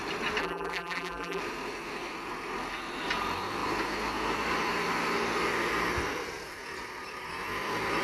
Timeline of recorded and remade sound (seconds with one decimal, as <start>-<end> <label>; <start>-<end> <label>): 0.0-0.4 recorded; 0.4-1.4 remade; 1.4-8.0 recorded